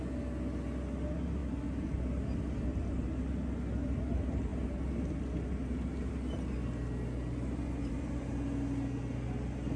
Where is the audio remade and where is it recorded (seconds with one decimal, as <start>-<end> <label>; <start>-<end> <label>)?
0.0-9.8 recorded